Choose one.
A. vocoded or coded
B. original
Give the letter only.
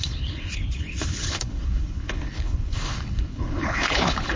A